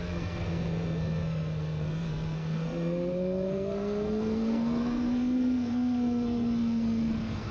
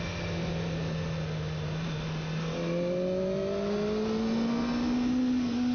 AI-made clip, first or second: first